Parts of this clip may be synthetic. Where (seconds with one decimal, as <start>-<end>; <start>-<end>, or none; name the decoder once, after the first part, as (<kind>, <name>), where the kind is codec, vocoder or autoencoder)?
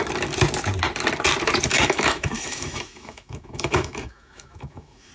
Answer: 1.7-5.1 (autoencoder, DAC-VAE)